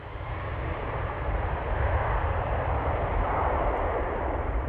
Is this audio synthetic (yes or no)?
yes